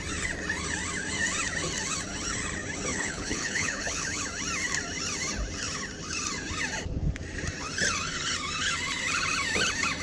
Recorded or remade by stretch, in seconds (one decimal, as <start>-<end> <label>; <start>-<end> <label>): 0.0-2.9 recorded; 2.9-4.2 remade; 4.2-10.0 recorded